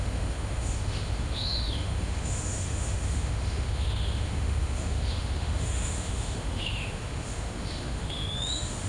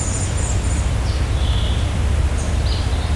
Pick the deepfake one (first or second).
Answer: first